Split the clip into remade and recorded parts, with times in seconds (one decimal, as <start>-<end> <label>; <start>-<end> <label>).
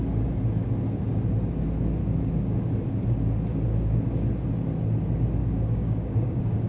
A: 0.0-2.0 recorded; 2.0-2.7 remade; 2.7-3.5 recorded; 3.5-4.3 remade; 4.3-5.4 recorded; 5.4-6.7 remade